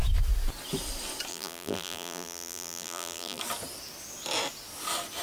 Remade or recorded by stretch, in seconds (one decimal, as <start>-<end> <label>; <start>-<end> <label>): 0.0-1.3 recorded; 1.3-3.4 remade; 3.4-5.2 recorded

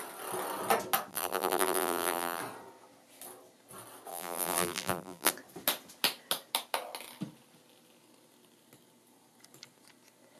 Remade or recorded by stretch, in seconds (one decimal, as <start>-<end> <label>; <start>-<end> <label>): 0.0-1.1 recorded; 1.1-2.4 remade; 2.4-4.1 recorded; 4.1-5.3 remade; 5.3-10.4 recorded

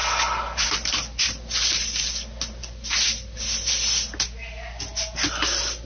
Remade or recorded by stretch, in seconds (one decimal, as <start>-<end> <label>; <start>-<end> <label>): 0.0-5.9 recorded

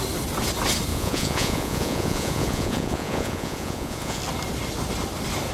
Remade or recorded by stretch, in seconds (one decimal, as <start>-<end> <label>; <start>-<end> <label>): 0.0-0.9 recorded; 0.9-4.2 remade; 4.2-5.5 recorded

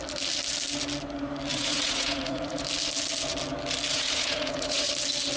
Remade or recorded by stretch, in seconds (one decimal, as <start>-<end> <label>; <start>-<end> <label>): 0.0-1.5 recorded; 1.5-2.6 remade; 2.6-3.9 recorded; 3.9-4.9 remade; 4.9-5.4 recorded

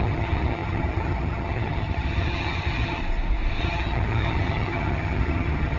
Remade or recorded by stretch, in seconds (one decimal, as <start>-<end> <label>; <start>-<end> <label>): 0.0-3.0 remade; 3.0-3.6 recorded; 3.6-5.8 remade

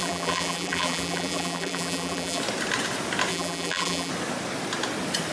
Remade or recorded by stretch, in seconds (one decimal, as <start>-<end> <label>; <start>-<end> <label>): 0.0-2.4 remade; 2.4-3.3 recorded; 3.3-4.1 remade; 4.1-5.3 recorded

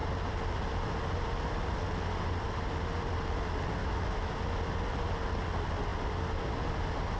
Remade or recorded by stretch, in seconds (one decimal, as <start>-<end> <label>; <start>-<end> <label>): 0.0-3.8 recorded; 3.8-4.4 remade; 4.4-7.2 recorded